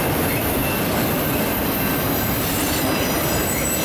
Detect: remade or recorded remade